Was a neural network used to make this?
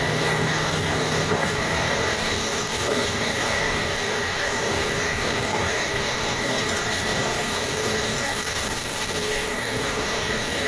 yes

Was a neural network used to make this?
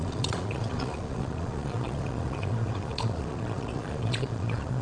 yes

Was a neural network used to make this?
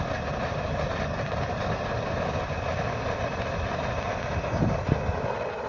no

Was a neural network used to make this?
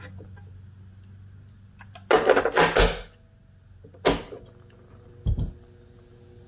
no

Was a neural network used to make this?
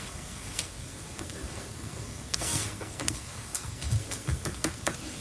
yes